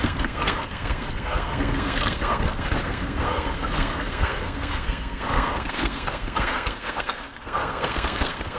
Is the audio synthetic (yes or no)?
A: yes